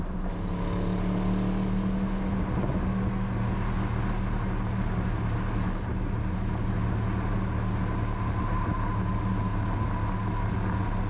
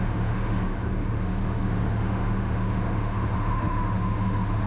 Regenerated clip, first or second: second